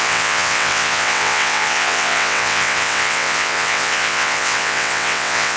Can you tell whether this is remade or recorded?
remade